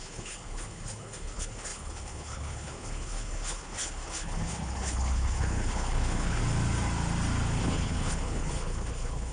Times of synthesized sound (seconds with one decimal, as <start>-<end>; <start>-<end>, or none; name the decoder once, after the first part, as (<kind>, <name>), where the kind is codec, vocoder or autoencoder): 0.0-6.4 (codec, HILCodec); 7.6-9.3